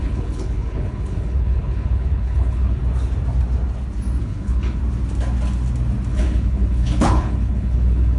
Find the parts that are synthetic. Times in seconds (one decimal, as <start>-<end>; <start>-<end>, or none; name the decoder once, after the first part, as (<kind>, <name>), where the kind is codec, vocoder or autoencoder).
0.0-2.8 (codec, HILCodec); 4.2-4.8; 6.1-8.2